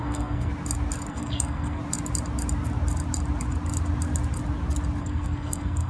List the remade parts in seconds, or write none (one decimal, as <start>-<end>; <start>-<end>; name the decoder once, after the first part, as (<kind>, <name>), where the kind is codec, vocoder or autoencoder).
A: 0.0-0.5 (codec, SNAC); 1.1-1.8; 5.0-5.9